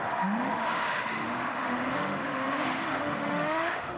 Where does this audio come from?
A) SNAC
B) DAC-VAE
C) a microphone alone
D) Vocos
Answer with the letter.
B